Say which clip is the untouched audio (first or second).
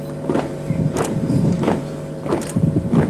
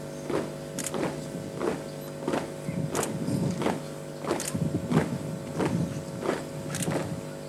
second